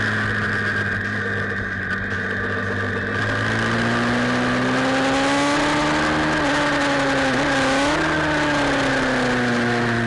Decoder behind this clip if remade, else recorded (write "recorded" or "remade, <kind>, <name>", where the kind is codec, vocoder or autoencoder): recorded